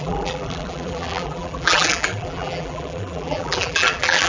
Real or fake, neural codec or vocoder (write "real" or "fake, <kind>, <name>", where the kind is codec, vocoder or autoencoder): fake, vocoder, BigVGAN v2